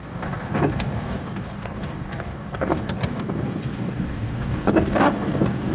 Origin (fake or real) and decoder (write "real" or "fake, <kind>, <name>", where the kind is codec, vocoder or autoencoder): fake, codec, DAC